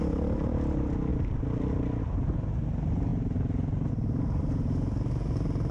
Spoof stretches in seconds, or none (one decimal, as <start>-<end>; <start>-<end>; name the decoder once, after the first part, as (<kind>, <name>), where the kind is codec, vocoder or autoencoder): none